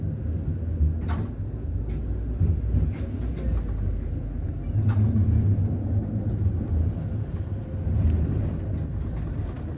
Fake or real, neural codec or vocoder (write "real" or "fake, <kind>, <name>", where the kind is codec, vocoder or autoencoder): real